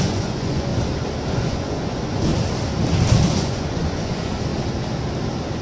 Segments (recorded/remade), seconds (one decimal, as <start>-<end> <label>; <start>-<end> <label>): 0.0-0.7 remade; 0.7-1.3 recorded; 1.3-2.3 remade; 2.3-3.3 recorded; 3.3-4.5 remade; 4.5-5.6 recorded